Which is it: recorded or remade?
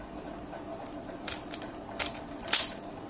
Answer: remade